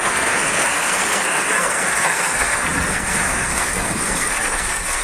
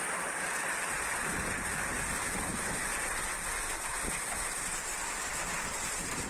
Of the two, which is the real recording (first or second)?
second